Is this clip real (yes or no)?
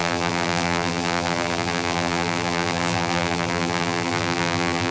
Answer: no